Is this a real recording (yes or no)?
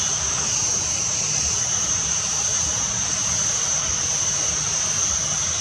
no